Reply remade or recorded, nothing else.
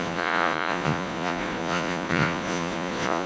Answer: remade